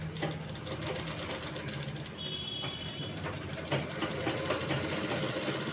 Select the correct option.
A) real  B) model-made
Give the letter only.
A